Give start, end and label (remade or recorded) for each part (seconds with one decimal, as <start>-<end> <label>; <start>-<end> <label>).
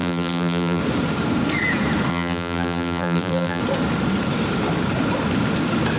0.0-0.8 remade; 0.8-2.1 recorded; 2.1-3.6 remade; 3.6-6.0 recorded